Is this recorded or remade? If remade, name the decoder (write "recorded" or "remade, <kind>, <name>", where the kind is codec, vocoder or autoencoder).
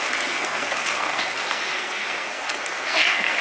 remade, codec, SNAC